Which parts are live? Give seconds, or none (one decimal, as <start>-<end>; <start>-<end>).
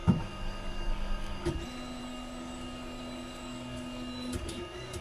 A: 1.6-2.0